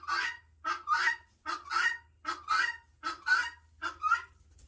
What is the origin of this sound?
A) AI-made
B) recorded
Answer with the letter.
B